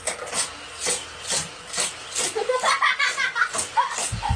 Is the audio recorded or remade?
recorded